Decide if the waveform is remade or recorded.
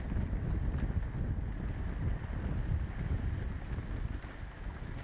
recorded